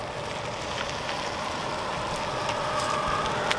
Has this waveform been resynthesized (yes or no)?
no